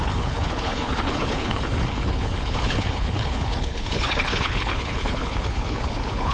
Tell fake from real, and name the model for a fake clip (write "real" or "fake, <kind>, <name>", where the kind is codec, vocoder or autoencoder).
fake, codec, HILCodec